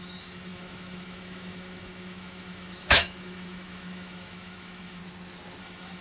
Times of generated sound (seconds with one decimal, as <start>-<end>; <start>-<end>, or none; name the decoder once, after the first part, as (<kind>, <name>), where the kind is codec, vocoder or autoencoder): 0.0-5.0 (autoencoder, DAC-VAE); 5.6-6.0

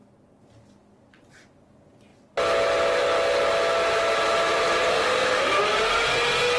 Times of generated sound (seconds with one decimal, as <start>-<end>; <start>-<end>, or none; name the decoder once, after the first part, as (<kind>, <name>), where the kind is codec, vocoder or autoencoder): 4.9-5.6 (autoencoder, DAC-VAE)

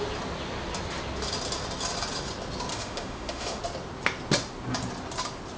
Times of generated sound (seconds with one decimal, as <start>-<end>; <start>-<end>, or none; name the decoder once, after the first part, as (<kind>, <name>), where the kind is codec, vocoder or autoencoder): 2.7-3.6 (autoencoder, DAC-VAE)

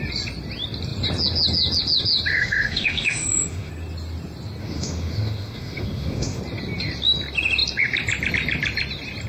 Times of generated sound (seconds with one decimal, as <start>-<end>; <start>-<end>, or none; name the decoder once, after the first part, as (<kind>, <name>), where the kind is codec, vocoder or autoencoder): 2.3-3.7 (autoencoder, DAC-VAE); 4.6-6.4

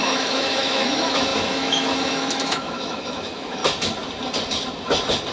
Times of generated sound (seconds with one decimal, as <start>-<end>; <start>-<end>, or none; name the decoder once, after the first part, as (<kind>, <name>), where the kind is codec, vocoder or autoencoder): 0.0-3.6 (autoencoder, DAC-VAE)